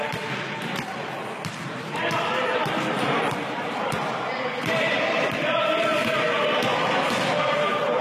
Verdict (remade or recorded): remade